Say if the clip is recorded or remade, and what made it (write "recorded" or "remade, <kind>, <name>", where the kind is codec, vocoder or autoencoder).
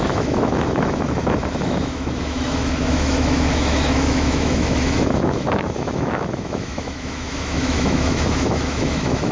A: remade, autoencoder, DAC-VAE